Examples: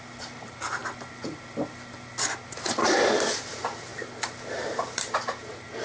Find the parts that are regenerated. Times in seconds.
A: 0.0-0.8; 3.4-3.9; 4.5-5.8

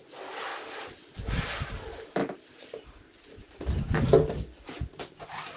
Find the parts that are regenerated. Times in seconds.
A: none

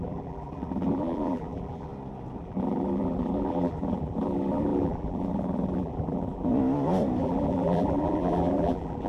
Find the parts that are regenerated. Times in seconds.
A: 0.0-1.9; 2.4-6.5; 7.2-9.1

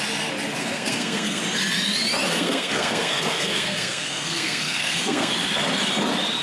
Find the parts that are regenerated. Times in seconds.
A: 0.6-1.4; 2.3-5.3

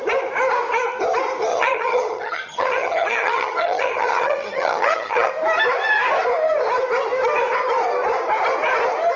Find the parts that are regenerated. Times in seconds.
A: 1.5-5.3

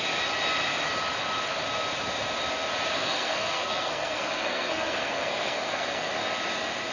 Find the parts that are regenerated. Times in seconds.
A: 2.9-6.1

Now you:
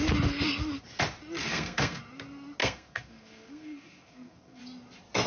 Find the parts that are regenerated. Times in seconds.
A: 1.5-2.0; 2.6-4.6

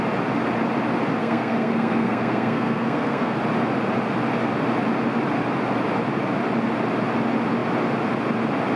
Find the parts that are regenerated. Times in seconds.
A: 1.2-3.4